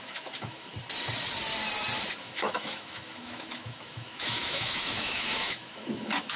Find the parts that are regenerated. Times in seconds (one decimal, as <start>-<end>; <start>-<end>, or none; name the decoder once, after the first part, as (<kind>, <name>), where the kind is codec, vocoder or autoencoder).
0.0-0.7 (autoencoder, DAC-VAE); 2.2-6.4